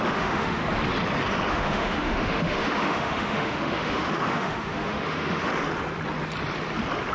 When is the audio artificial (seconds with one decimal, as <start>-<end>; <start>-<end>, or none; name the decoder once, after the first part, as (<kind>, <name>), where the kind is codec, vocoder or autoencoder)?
0.0-0.6 (autoencoder, DAC-VAE); 1.5-5.5